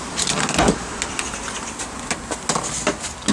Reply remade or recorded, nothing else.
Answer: recorded